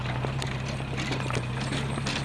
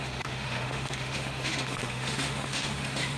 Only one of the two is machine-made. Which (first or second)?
second